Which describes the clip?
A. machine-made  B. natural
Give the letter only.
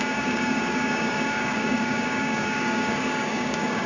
A